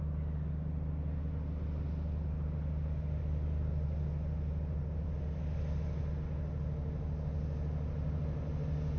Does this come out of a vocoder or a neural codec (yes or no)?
no